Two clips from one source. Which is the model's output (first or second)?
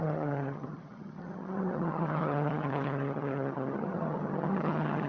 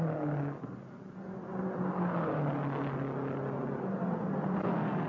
first